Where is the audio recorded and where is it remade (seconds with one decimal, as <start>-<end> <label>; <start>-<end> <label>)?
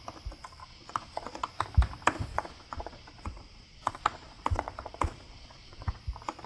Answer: 0.0-0.6 recorded; 0.6-1.5 remade; 1.5-2.3 recorded; 2.3-6.0 remade; 6.0-6.5 recorded